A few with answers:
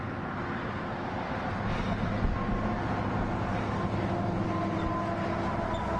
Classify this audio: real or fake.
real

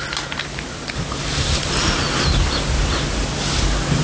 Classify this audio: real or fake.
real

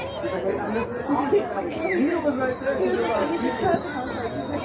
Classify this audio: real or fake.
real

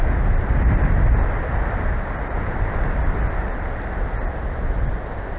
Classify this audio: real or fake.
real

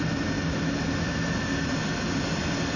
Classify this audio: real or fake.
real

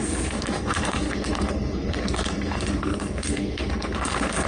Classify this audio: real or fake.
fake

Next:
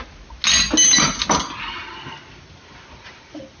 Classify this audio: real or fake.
real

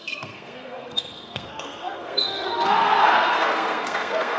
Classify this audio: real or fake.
fake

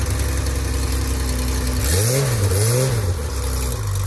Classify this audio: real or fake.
real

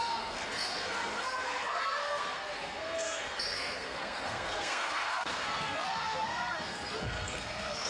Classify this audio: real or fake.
fake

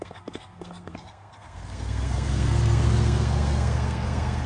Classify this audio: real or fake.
fake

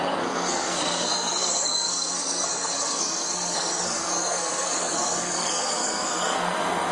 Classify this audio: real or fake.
fake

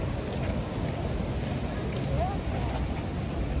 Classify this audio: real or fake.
real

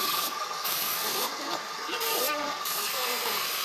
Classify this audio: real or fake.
fake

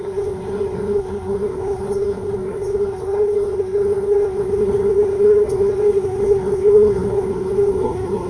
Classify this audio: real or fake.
fake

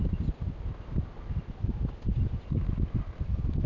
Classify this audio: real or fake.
real